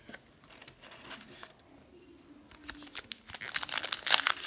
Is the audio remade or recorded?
recorded